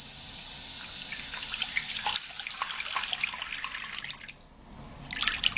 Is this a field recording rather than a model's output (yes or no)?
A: yes